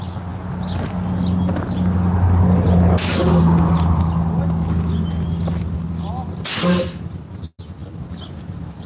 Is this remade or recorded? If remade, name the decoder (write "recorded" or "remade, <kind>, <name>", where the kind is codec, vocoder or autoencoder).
recorded